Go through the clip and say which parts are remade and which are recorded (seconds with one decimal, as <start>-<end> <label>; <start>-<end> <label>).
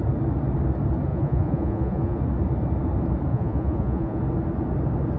0.0-1.1 recorded; 1.1-2.2 remade; 2.2-3.3 recorded; 3.3-4.2 remade; 4.2-5.2 recorded